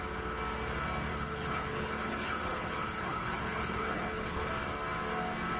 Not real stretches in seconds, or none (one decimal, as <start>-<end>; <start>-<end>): 1.1-4.5